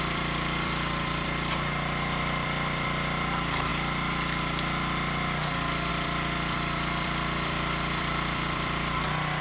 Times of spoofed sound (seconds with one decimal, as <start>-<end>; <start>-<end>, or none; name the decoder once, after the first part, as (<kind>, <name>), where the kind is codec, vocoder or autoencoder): 0.0-3.7 (vocoder, BigVGAN v2); 5.9-9.4